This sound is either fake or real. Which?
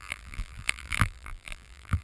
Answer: fake